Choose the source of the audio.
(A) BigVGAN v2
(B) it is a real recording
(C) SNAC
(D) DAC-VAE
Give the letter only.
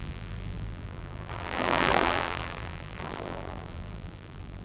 A